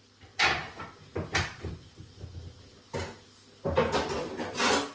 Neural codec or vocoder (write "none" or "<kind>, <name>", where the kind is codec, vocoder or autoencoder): none